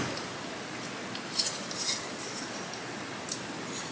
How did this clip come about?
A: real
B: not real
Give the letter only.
A